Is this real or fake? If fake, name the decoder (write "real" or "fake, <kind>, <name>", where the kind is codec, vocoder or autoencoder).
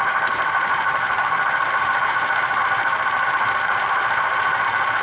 fake, vocoder, BigVGAN v2